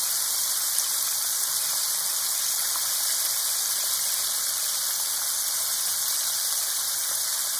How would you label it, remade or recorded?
recorded